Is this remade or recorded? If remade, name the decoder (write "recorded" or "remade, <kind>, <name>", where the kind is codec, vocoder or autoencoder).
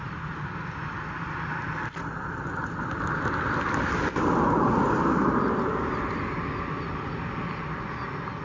recorded